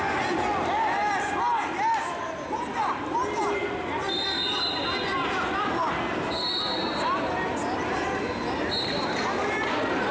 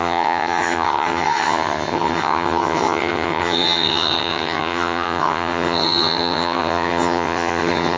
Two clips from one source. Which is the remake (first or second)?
second